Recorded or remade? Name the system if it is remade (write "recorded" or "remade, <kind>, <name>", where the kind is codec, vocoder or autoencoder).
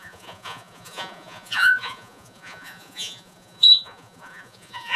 remade, vocoder, Vocos